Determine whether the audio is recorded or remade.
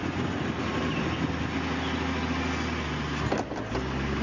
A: recorded